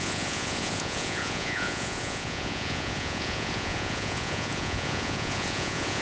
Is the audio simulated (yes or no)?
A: yes